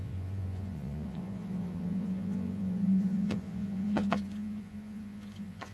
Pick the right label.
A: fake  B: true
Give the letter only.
A